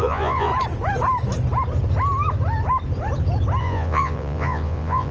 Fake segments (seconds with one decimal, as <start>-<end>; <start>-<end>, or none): 0.0-0.5; 3.6-5.1